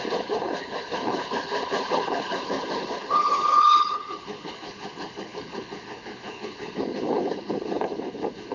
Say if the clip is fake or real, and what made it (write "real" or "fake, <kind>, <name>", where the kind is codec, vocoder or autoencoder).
fake, codec, HILCodec